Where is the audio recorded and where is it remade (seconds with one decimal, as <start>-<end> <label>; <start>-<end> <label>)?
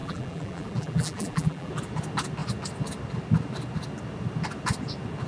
0.0-1.7 remade; 1.7-5.3 recorded